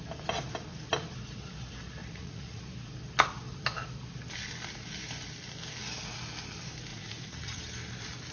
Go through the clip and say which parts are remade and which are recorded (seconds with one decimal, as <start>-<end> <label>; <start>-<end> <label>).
0.0-2.0 recorded; 2.0-2.6 remade; 2.6-6.9 recorded; 6.9-7.6 remade; 7.6-8.3 recorded